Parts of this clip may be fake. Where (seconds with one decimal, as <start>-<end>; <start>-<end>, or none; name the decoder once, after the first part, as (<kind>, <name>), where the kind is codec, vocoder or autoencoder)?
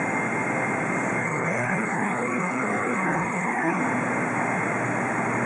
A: 1.2-3.8 (codec, SNAC)